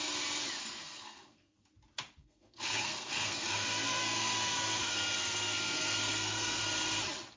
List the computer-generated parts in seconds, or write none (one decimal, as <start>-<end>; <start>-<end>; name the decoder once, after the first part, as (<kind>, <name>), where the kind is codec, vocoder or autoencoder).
0.6-1.6 (codec, SNAC); 2.2-6.6